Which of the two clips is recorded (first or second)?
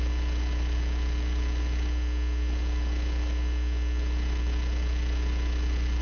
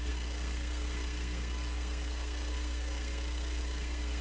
first